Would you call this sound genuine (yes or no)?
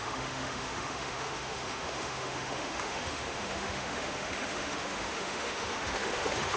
no